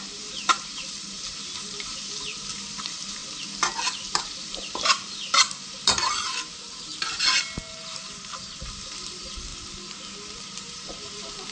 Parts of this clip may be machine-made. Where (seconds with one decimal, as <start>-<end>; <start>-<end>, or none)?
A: 0.0-3.2; 4.2-6.9; 7.7-9.5; 10.3-11.5

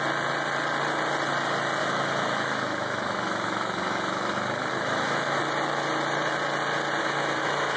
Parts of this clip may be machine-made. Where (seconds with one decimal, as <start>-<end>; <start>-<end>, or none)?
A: 1.8-5.4; 7.0-7.8